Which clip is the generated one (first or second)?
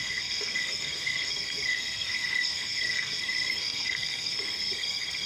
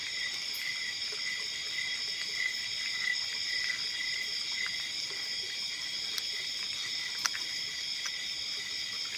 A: first